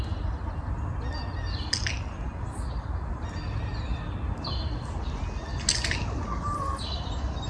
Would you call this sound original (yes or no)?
yes